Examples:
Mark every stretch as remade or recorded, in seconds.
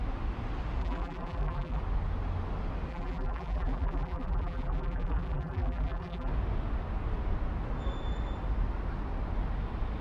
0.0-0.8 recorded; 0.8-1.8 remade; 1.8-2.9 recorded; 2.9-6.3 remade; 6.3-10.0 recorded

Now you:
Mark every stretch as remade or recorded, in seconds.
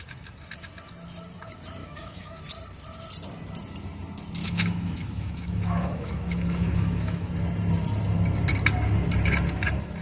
0.0-1.8 recorded; 1.8-2.4 remade; 2.4-4.4 recorded; 4.4-7.3 remade; 7.3-10.0 recorded